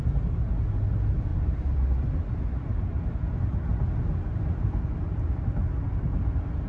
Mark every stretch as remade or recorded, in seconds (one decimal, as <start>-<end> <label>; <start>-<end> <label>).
0.0-6.7 recorded